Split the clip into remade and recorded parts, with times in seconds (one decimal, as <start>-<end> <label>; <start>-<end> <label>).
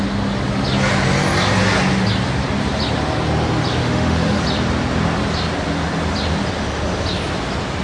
0.0-3.8 recorded; 3.8-4.4 remade; 4.4-7.8 recorded